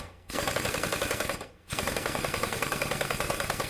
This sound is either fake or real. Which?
fake